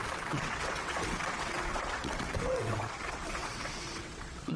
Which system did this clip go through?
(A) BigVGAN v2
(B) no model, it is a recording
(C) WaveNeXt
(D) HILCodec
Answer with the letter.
C